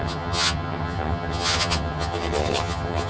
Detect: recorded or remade remade